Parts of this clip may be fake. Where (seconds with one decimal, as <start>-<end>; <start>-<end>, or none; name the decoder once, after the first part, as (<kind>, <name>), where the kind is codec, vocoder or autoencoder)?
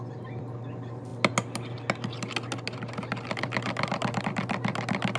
none